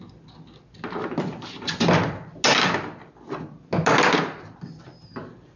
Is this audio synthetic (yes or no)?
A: no